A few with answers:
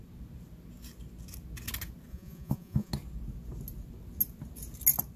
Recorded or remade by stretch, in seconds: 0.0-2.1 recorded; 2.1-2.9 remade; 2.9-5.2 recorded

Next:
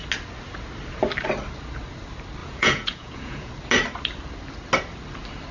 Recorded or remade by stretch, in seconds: 0.0-2.4 recorded; 2.4-3.5 remade; 3.5-5.5 recorded